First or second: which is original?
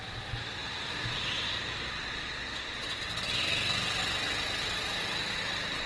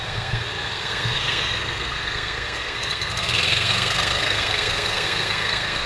first